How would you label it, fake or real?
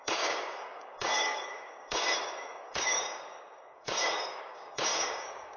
fake